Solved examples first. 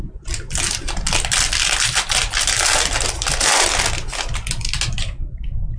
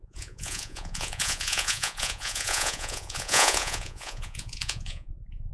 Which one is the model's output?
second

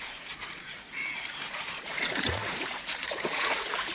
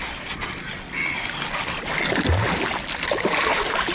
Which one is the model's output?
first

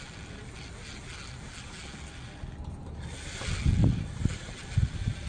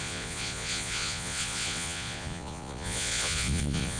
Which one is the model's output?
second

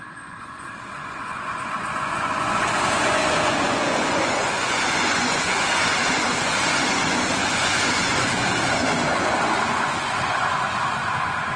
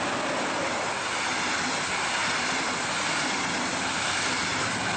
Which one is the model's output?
first